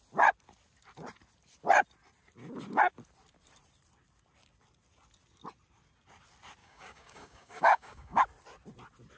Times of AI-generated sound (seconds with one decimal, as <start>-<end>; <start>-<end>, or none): 6.6-8.2